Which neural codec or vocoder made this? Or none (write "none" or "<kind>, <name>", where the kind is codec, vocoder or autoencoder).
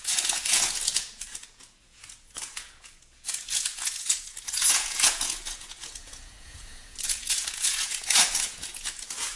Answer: vocoder, Vocos